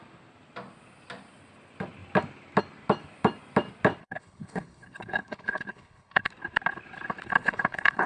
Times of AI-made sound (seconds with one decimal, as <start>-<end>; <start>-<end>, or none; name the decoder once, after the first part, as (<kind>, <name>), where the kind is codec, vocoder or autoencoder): 4.0-6.3 (codec, HILCodec); 7.4-8.1